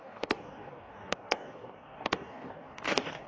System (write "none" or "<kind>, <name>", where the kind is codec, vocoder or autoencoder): codec, DAC